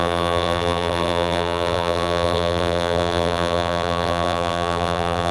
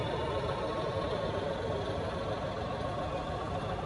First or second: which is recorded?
second